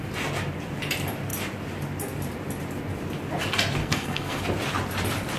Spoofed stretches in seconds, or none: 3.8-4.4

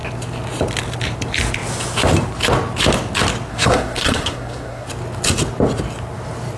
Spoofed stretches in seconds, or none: 3.5-4.9

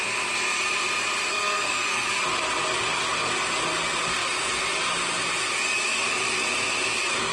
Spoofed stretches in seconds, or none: 1.3-2.1

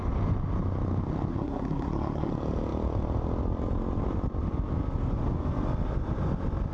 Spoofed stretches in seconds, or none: 1.3-2.3

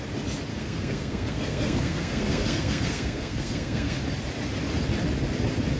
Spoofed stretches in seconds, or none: 0.5-4.0

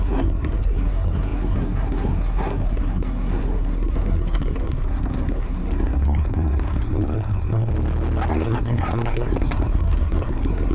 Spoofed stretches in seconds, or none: 0.0-7.7; 8.3-10.7

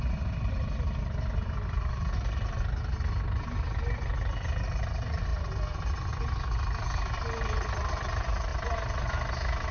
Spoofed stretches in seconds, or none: none

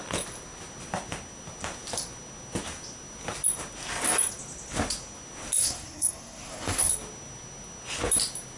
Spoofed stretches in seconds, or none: 5.6-6.9